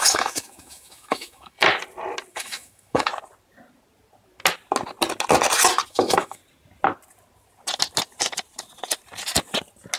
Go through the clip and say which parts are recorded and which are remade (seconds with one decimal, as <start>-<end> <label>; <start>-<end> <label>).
0.0-1.6 remade; 1.6-2.3 recorded; 2.3-3.1 remade; 3.1-5.9 recorded; 5.9-6.4 remade; 6.4-10.0 recorded